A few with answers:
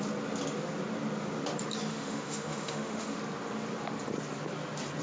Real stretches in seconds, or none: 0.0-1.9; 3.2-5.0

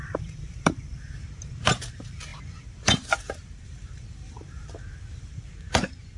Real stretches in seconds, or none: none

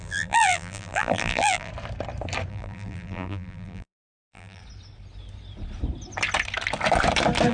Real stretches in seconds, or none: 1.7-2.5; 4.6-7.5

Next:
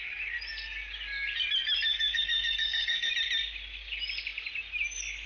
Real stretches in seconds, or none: 0.0-1.9; 3.1-5.3